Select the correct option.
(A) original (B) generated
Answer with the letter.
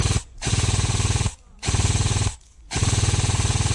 B